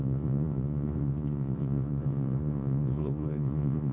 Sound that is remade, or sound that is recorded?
remade